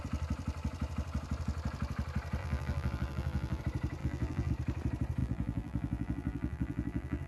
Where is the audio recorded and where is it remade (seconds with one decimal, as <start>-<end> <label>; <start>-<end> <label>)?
0.0-2.4 recorded; 2.4-3.6 remade; 3.6-4.0 recorded; 4.0-4.5 remade; 4.5-5.2 recorded; 5.2-7.3 remade